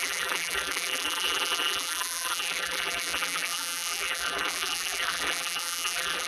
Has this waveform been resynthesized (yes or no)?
yes